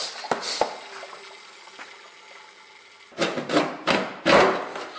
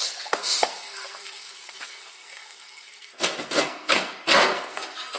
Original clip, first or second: first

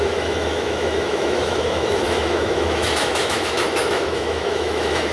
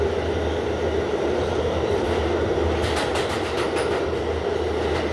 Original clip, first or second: second